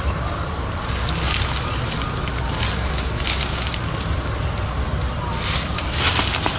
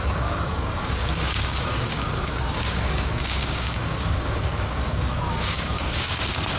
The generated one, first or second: second